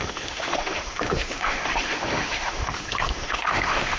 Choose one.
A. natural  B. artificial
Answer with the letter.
B